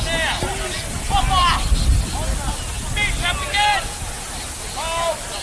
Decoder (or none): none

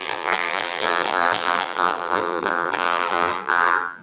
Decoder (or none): vocoder, BigVGAN v2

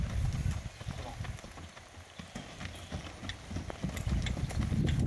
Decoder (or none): none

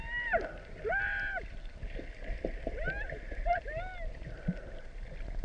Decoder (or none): none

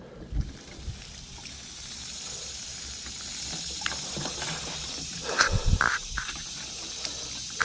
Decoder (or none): none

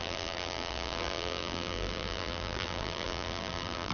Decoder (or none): vocoder, BigVGAN v2